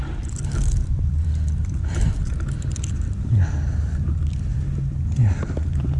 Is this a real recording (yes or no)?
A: no